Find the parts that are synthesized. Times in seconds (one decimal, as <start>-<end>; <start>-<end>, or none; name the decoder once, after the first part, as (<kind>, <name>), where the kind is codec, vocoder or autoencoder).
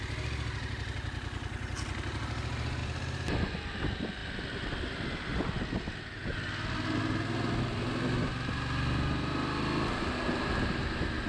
none